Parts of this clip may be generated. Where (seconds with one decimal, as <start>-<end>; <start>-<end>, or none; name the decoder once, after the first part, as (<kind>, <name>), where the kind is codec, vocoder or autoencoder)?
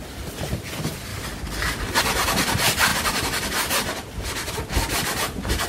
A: 2.9-3.7 (vocoder, BigVGAN v2)